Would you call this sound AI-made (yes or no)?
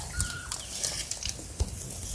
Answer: no